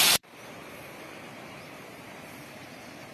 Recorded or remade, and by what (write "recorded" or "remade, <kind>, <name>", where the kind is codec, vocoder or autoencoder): remade, vocoder, BigVGAN v2